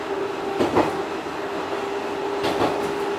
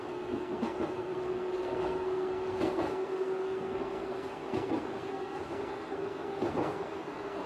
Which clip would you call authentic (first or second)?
first